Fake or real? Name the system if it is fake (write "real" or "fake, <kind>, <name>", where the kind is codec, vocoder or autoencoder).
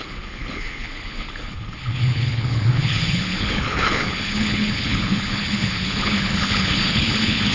fake, codec, HILCodec